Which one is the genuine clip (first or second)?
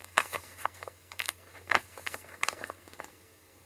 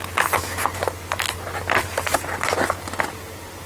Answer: second